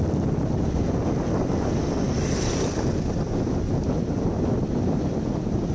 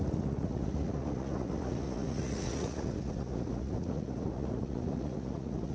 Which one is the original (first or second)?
first